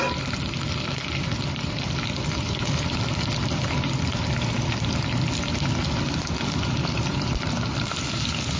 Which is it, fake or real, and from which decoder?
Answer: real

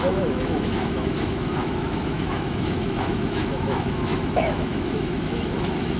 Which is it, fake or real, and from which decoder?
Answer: fake, autoencoder, DAC-VAE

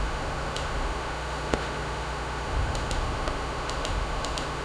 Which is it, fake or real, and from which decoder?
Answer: fake, autoencoder, DAC-VAE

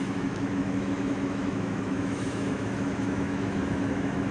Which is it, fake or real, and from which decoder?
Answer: fake, autoencoder, DAC-VAE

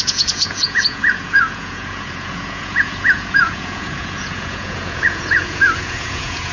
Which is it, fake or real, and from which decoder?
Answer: fake, vocoder, Vocos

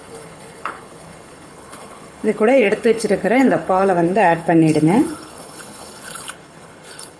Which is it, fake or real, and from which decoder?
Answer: fake, codec, HILCodec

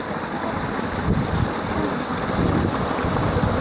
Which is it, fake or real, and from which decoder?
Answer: fake, vocoder, BigVGAN v2